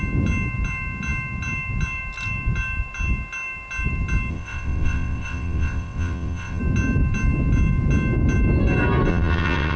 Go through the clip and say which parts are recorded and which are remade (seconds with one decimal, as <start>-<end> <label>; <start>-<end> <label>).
0.0-4.3 recorded; 4.3-6.6 remade; 6.6-9.1 recorded; 9.1-9.8 remade